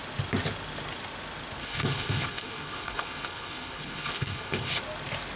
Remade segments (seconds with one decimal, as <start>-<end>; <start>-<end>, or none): 1.6-4.8